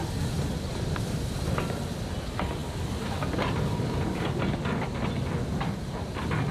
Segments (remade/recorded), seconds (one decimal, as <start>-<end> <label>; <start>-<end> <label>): 0.0-6.5 recorded